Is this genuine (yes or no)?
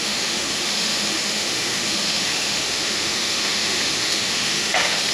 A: no